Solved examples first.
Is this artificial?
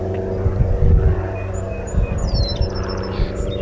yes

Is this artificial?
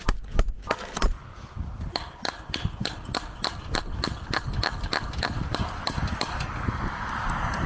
no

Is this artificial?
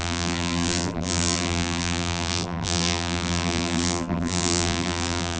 yes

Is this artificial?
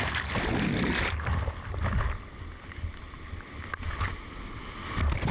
no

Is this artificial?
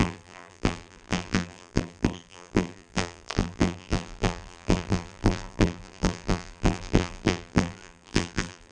yes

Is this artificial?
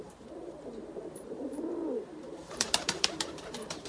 yes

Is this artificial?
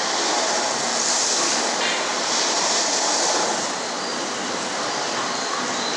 no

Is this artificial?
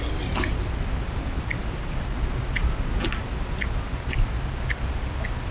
no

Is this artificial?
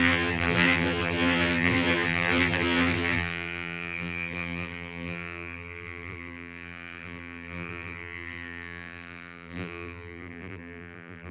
yes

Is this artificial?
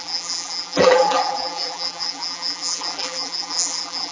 yes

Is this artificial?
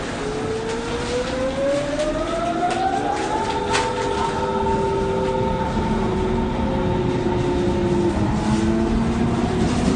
no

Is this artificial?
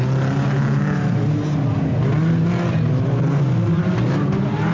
no